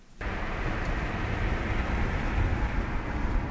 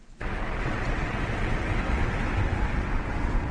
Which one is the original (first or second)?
first